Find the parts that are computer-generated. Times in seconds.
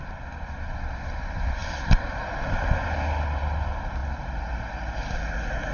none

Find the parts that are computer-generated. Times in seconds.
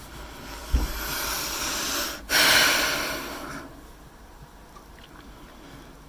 none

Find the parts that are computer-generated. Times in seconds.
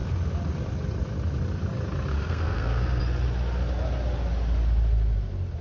2.1-3.0 (codec, SNAC)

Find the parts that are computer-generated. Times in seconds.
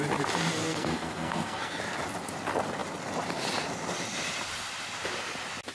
0.6-1.8 (codec, SNAC)